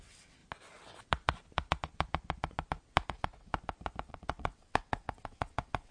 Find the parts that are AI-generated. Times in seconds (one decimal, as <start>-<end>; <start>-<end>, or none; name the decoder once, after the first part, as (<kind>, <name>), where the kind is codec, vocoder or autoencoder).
0.0-0.4 (vocoder, WaveNeXt); 3.1-3.5; 4.1-5.9